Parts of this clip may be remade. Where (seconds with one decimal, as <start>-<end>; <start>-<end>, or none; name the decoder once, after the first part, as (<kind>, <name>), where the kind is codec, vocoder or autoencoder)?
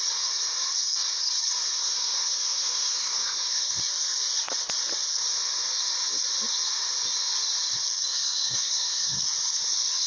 1.8-3.7 (codec, SNAC); 8.1-9.2